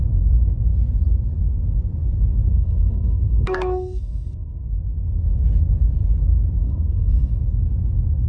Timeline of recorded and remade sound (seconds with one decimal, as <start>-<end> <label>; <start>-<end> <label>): 0.0-2.5 recorded; 2.5-4.6 remade; 4.6-6.6 recorded; 6.6-7.3 remade; 7.3-8.3 recorded